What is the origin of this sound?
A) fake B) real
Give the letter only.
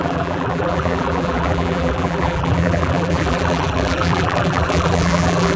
A